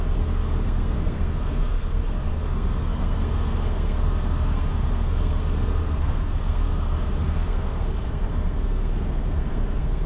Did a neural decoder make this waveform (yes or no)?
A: yes